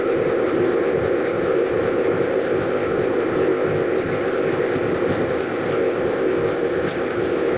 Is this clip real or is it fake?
fake